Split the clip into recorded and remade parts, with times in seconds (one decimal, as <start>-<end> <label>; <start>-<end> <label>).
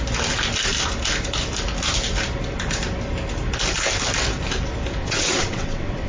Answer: 0.0-5.0 recorded; 5.0-6.1 remade